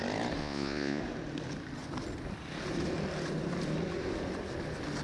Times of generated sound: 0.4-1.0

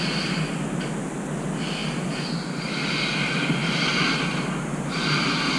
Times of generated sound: none

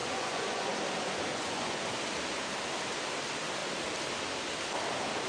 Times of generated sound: 0.0-0.8; 1.3-1.9

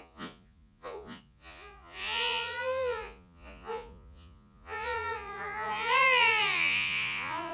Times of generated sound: 0.0-7.5